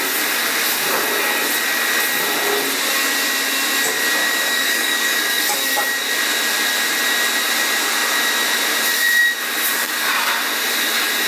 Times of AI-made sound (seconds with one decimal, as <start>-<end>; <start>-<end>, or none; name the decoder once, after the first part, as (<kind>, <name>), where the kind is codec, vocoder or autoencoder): 4.2-5.4 (codec, DAC); 9.7-10.3